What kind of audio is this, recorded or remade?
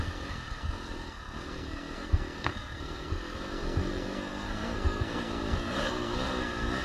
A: remade